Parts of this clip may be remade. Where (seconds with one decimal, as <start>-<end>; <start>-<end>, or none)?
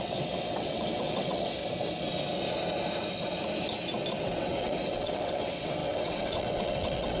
0.0-1.6; 4.2-7.2